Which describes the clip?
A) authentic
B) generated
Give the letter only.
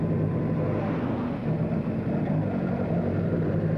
A